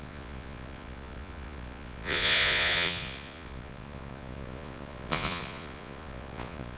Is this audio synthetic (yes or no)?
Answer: yes